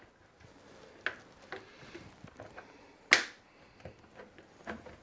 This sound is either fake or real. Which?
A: real